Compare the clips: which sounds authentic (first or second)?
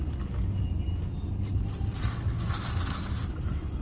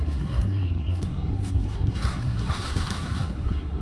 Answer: first